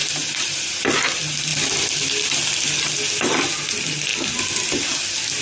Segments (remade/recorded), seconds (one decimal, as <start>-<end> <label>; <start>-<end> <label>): 0.0-5.4 recorded